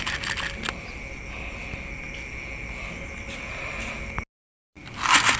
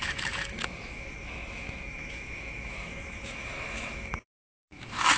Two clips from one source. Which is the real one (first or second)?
first